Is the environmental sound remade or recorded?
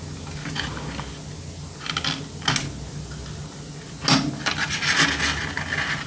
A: recorded